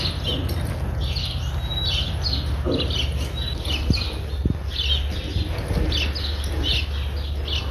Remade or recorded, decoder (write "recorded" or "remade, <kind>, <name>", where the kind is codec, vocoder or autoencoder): recorded